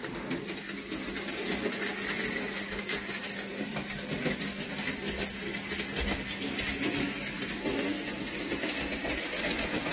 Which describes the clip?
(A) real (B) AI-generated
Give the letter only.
A